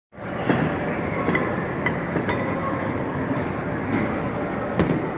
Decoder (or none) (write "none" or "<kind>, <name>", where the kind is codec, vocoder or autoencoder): none